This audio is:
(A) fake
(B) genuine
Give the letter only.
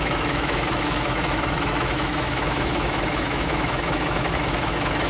A